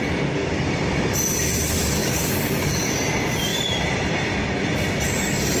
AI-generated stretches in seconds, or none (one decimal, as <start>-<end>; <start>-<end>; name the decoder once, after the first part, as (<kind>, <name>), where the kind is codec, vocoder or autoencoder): 2.0-2.9 (codec, DAC)